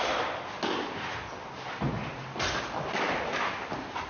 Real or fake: real